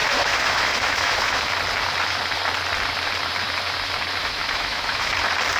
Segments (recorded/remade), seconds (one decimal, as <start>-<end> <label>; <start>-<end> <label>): 0.0-1.5 remade; 1.5-4.2 recorded; 4.2-5.1 remade; 5.1-5.6 recorded